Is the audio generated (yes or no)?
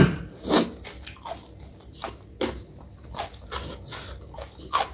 no